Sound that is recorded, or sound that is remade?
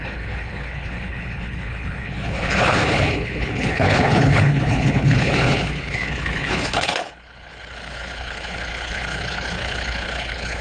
remade